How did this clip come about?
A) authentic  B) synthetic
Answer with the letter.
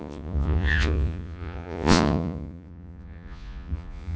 B